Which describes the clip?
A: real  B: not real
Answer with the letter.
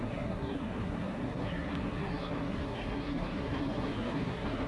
B